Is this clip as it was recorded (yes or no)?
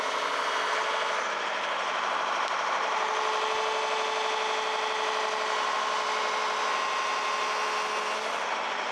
yes